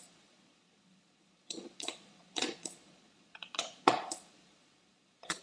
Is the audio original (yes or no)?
no